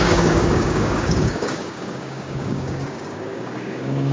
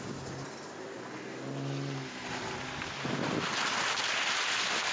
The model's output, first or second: first